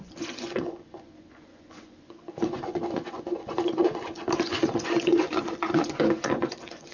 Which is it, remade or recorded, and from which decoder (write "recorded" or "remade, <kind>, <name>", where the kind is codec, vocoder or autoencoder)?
remade, vocoder, Vocos